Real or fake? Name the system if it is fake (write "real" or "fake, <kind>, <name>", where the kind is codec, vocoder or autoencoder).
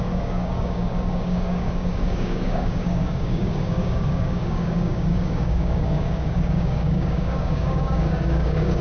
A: fake, codec, DAC